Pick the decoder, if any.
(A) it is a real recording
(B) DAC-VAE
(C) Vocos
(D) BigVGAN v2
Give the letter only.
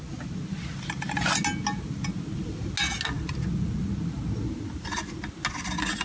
A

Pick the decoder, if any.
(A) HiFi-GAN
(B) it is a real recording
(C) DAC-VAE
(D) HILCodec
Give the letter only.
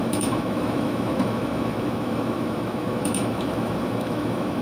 C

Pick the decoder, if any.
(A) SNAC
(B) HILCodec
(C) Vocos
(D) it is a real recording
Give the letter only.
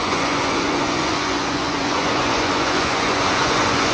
C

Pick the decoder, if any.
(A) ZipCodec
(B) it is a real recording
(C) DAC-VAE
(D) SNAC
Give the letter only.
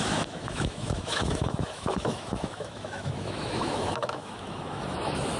C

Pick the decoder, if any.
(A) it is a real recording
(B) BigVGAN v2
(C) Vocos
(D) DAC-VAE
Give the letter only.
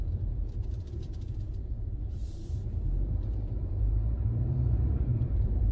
B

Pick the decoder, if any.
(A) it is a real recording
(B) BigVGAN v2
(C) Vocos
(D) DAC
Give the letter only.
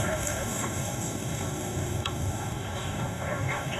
D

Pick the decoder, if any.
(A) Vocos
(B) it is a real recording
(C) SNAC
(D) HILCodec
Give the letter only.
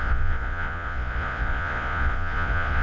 A